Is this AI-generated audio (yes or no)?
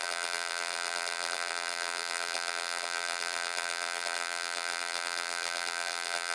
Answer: yes